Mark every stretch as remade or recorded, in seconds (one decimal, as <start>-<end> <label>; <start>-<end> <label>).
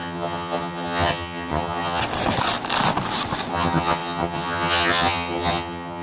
0.0-2.0 remade; 2.0-3.5 recorded; 3.5-6.0 remade